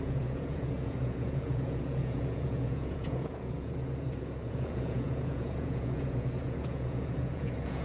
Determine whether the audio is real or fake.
fake